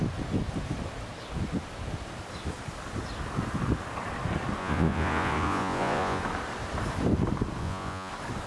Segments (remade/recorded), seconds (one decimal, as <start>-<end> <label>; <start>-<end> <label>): 0.0-4.6 recorded; 4.6-6.2 remade; 6.2-7.6 recorded; 7.6-8.1 remade; 8.1-8.5 recorded